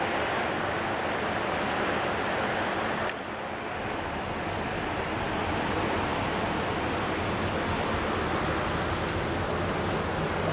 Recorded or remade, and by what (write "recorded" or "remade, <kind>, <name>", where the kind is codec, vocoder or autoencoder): recorded